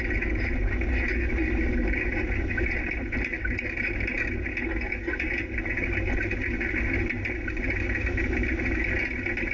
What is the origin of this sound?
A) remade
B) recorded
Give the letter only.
B